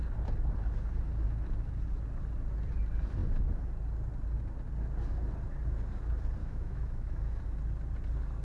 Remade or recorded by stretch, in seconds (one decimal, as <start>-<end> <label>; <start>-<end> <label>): 0.0-6.4 recorded; 6.4-7.4 remade; 7.4-8.4 recorded